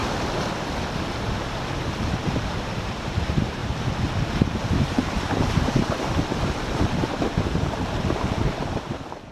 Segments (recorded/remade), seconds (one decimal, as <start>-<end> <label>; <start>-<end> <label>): 0.0-1.9 recorded; 1.9-3.6 remade; 3.6-4.1 recorded; 4.1-9.3 remade